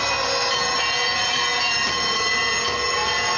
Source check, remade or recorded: recorded